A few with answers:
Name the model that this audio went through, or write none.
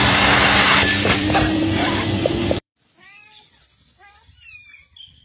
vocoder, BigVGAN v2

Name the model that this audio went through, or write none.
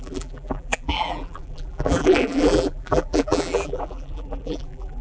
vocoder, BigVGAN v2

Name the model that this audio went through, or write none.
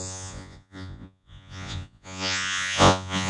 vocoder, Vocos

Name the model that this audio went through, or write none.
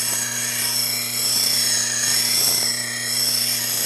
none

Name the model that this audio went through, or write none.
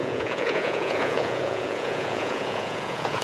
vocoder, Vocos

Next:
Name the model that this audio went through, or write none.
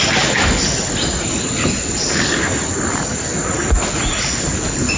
none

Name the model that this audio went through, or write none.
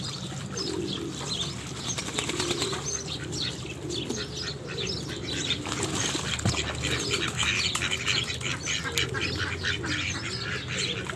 none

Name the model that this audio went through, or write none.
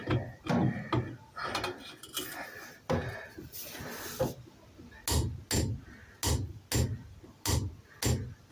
none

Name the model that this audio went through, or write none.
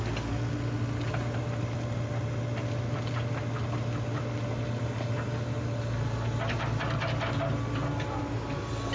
none